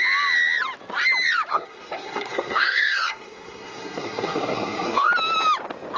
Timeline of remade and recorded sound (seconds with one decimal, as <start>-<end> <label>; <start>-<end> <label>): 0.0-1.5 recorded; 1.5-5.1 remade; 5.1-6.0 recorded